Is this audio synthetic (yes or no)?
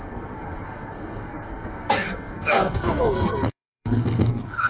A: yes